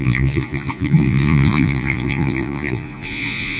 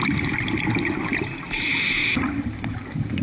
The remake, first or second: first